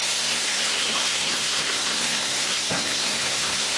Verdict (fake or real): fake